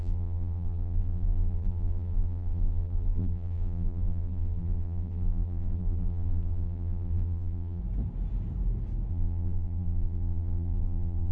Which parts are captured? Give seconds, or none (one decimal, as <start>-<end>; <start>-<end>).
7.8-9.1